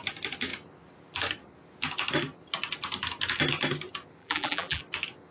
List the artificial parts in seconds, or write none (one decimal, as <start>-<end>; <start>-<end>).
4.2-4.8